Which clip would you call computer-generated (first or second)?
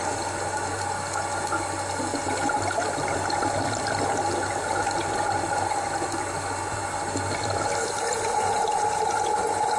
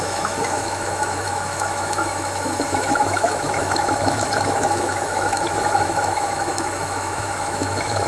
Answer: second